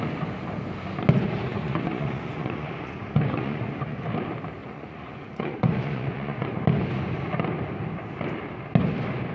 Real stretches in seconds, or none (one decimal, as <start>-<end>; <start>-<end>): 0.0-1.5; 4.0-4.6; 6.6-9.3

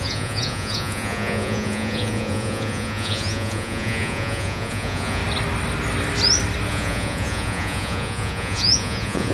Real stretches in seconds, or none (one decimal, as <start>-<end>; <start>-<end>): 5.2-6.7

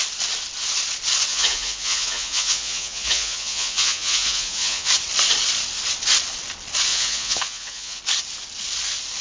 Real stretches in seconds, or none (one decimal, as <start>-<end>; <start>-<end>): 0.0-1.3; 4.9-6.9; 8.0-9.2